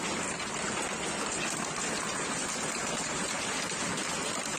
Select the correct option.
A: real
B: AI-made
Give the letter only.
A